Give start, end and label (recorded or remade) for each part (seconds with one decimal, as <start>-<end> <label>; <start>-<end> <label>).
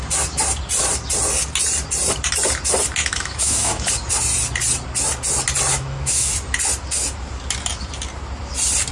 0.0-3.0 recorded; 3.0-3.9 remade; 3.9-5.7 recorded; 5.7-6.3 remade; 6.3-8.9 recorded